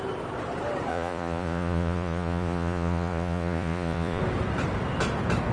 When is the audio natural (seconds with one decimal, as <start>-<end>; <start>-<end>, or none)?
0.0-0.9; 4.2-5.5